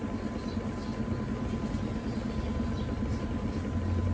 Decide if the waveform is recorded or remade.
recorded